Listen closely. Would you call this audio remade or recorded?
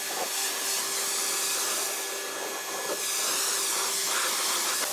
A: recorded